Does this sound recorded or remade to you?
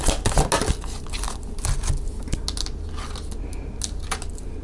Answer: recorded